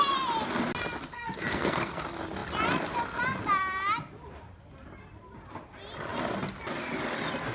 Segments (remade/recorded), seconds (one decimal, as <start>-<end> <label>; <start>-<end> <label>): 0.0-1.1 recorded; 1.1-2.0 remade; 2.0-7.5 recorded